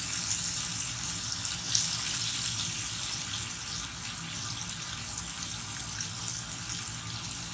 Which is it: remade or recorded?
recorded